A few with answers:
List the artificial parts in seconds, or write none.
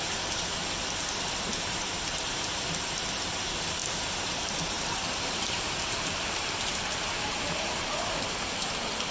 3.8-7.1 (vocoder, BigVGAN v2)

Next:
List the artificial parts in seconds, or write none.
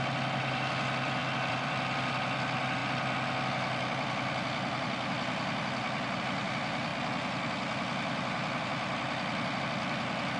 1.2-2.0 (vocoder, BigVGAN v2)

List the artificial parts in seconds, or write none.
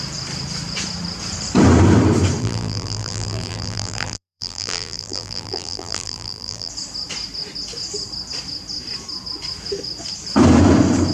2.4-6.7 (vocoder, BigVGAN v2)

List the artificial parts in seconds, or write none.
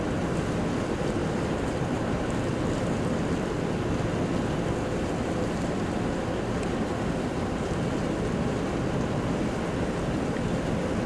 1.2-2.3 (vocoder, BigVGAN v2)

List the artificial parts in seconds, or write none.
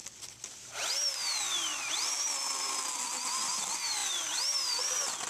0.0-0.9 (vocoder, BigVGAN v2); 1.5-2.1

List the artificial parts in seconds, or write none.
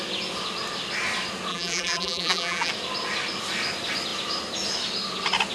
1.5-2.7 (vocoder, BigVGAN v2)